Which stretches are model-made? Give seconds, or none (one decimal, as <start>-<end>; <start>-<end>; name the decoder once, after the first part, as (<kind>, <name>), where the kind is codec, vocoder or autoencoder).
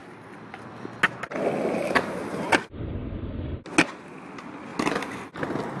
none